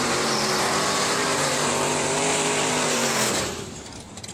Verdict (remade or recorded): remade